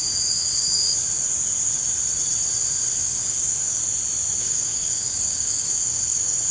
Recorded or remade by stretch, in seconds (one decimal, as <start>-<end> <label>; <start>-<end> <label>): 0.0-0.8 remade; 0.8-3.0 recorded; 3.0-3.8 remade; 3.8-4.4 recorded; 4.4-6.5 remade